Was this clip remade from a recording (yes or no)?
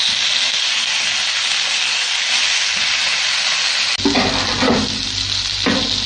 no